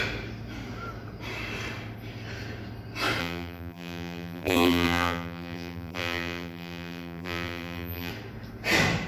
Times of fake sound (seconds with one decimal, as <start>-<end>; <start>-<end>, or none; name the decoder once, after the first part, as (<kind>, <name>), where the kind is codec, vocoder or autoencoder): 3.2-8.1 (vocoder, BigVGAN v2)